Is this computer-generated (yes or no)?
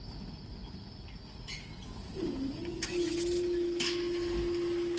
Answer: no